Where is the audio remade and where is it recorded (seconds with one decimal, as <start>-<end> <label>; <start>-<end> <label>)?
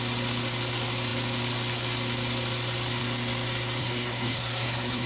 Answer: 0.0-3.8 recorded; 3.8-5.1 remade